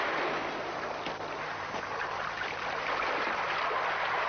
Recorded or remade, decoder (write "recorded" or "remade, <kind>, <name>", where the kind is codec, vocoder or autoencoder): recorded